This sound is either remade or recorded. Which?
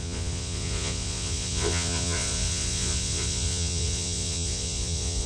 remade